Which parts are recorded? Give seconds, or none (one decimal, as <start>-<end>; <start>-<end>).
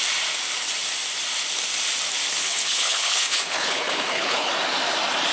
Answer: 0.0-2.4; 4.5-5.3